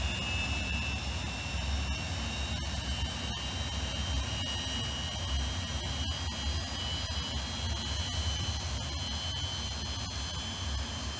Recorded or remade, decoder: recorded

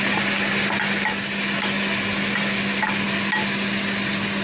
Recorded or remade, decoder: recorded